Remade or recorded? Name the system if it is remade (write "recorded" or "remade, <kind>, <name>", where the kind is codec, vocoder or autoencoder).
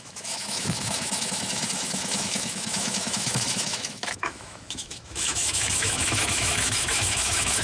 remade, autoencoder, DAC-VAE